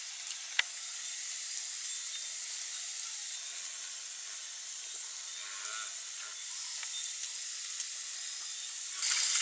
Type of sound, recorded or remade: recorded